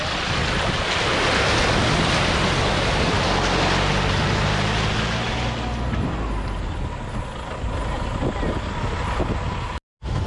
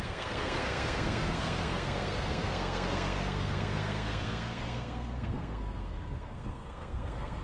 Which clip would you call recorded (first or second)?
first